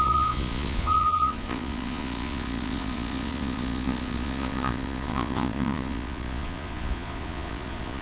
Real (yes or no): no